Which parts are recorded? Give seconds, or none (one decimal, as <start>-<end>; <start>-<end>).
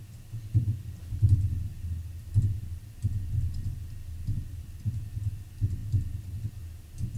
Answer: 0.0-7.2